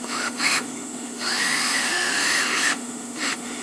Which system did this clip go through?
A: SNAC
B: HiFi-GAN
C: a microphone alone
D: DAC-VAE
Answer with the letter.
D